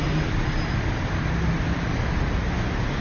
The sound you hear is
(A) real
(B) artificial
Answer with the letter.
A